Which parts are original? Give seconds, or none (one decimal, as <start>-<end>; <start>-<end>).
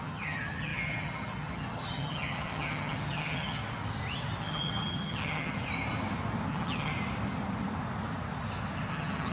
3.6-4.4; 5.6-6.5; 6.9-8.9